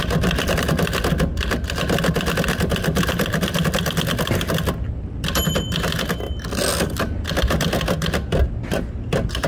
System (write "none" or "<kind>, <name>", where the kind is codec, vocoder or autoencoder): none